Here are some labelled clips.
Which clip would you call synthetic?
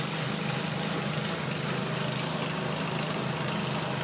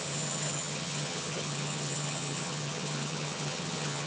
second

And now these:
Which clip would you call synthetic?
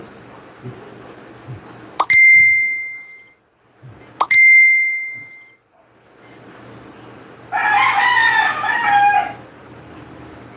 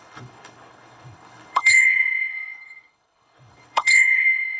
second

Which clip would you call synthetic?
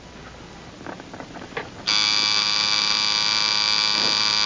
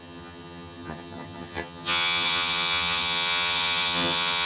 second